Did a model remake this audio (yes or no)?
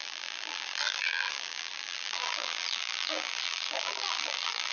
yes